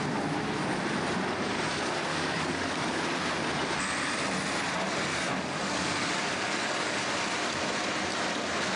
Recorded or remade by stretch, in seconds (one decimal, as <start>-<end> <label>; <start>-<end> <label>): 0.0-2.1 recorded; 2.1-3.0 remade; 3.0-5.1 recorded; 5.1-7.0 remade; 7.0-8.8 recorded